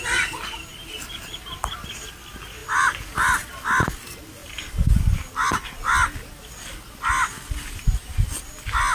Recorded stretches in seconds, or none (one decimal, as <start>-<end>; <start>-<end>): 0.0-2.6; 3.5-8.9